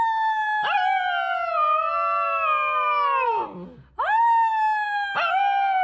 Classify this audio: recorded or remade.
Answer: recorded